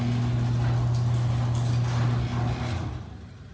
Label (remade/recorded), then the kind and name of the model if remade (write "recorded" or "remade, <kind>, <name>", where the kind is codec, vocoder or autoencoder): recorded